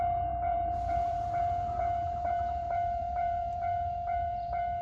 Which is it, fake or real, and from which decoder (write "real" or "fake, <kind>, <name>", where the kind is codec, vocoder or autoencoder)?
fake, vocoder, BigVGAN v2